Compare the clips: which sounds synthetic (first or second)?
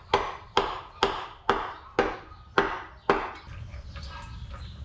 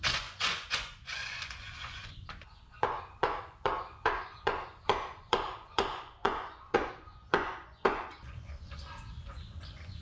second